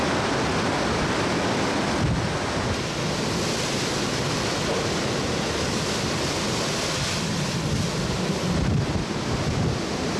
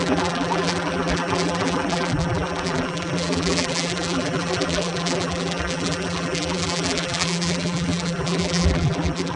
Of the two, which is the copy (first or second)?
second